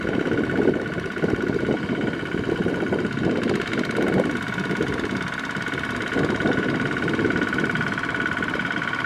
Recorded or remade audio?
recorded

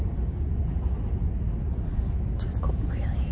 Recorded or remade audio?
recorded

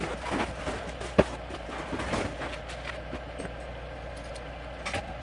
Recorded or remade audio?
recorded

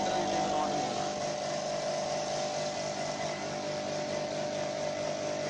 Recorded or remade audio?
recorded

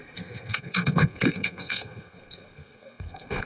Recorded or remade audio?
remade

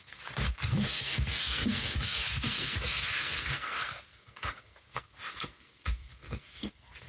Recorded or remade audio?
remade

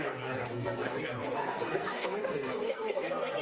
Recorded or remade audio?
remade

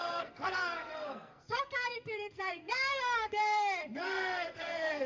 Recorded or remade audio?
remade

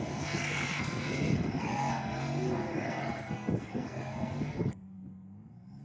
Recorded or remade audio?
remade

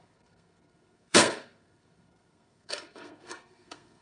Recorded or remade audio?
remade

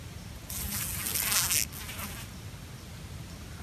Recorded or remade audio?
recorded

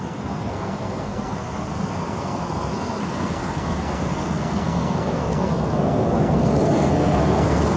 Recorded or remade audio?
remade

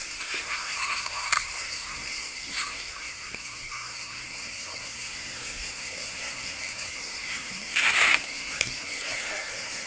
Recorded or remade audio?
remade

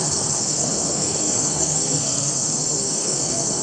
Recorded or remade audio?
remade